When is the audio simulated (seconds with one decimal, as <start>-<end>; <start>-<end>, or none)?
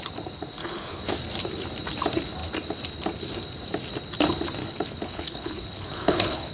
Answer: 0.6-1.1; 4.6-6.5